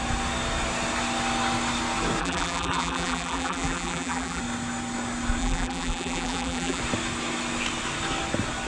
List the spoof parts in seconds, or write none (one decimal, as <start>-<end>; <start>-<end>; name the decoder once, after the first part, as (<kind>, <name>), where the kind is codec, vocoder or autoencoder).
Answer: 2.2-4.4 (vocoder, BigVGAN v2); 5.4-6.8